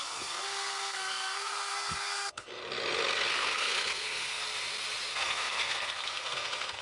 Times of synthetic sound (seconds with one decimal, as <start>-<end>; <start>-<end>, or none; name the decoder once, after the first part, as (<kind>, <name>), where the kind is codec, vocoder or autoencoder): 0.0-2.6 (codec, SNAC); 3.3-4.4; 5.1-6.8